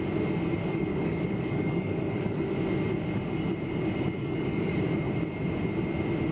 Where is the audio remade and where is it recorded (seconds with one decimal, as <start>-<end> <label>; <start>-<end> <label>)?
0.0-0.6 recorded; 0.6-2.6 remade; 2.6-4.2 recorded; 4.2-4.8 remade; 4.8-6.3 recorded